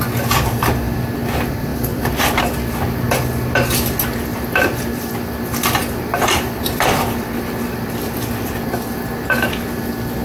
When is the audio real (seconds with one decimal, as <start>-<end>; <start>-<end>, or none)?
0.0-1.7; 2.4-4.3; 5.1-5.8; 9.1-10.2

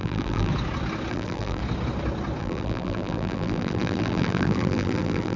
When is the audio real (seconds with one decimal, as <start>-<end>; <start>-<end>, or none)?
0.5-1.1; 1.6-2.4

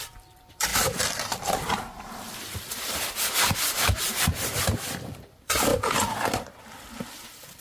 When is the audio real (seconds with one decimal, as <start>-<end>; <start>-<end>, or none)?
none

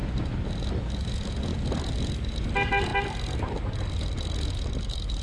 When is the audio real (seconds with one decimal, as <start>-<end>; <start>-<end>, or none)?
0.0-1.5; 2.1-2.9

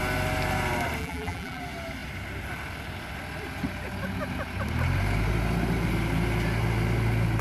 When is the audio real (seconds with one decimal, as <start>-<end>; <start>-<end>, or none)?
0.0-1.0; 1.6-7.4

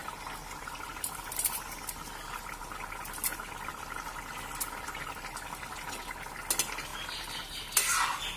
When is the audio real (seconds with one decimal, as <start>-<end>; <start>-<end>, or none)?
0.0-8.4